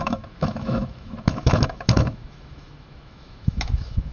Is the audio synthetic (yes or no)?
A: yes